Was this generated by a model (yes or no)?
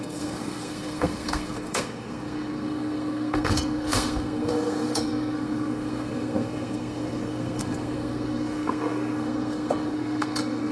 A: yes